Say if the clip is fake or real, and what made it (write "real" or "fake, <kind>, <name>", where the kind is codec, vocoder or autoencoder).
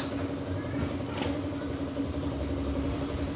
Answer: fake, vocoder, BigVGAN v2